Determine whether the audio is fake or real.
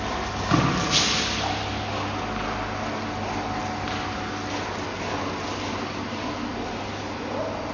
real